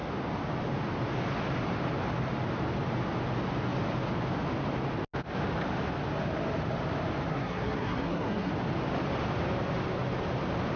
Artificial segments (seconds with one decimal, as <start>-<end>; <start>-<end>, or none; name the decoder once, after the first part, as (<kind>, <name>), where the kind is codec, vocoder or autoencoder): 7.3-8.5 (codec, SNAC)